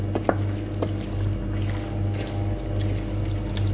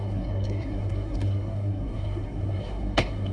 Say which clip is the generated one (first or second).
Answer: second